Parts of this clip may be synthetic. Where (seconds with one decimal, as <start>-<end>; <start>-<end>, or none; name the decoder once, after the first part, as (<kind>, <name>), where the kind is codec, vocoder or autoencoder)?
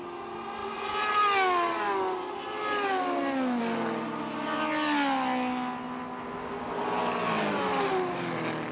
none